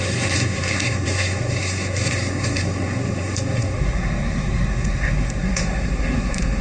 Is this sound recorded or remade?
remade